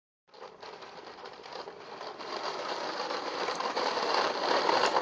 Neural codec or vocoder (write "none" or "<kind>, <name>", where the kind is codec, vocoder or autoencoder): vocoder, BigVGAN v2